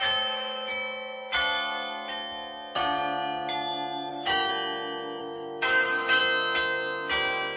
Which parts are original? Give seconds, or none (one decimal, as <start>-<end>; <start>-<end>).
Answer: 0.7-4.1; 4.5-5.2; 6.2-7.6